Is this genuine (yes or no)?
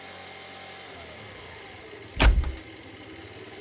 yes